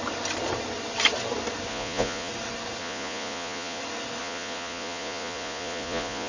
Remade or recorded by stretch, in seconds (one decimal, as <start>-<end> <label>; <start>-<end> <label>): 0.0-1.7 recorded; 1.7-2.3 remade; 2.3-2.8 recorded; 2.8-3.8 remade; 3.8-4.2 recorded; 4.2-6.3 remade